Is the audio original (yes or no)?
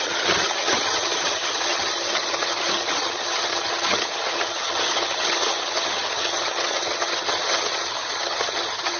no